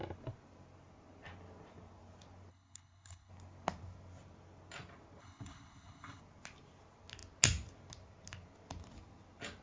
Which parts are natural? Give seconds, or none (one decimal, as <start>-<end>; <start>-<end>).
0.0-2.5; 3.3-5.2; 6.2-9.6